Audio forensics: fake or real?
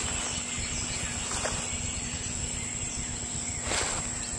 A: real